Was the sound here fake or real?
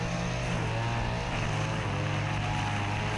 real